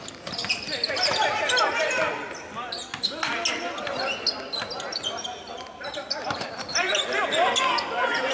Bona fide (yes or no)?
yes